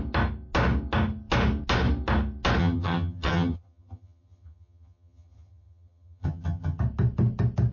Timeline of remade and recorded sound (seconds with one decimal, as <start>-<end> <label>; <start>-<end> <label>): 0.0-2.6 recorded; 2.6-6.8 remade; 6.8-7.7 recorded